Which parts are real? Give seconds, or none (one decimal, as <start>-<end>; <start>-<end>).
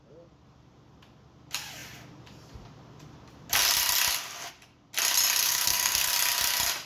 0.0-5.4; 6.1-6.9